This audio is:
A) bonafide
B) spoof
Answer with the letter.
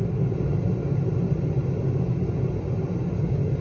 A